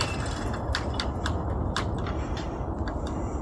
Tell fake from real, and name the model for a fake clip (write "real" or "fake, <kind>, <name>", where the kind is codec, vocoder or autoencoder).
real